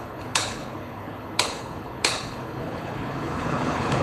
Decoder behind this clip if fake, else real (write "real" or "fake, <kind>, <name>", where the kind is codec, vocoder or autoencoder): fake, codec, HILCodec